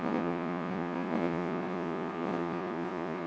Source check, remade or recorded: remade